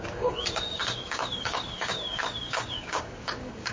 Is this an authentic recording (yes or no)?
no